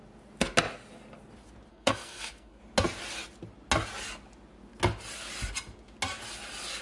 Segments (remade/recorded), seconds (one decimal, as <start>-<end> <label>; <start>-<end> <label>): 0.0-1.7 recorded; 1.7-2.6 remade; 2.6-6.8 recorded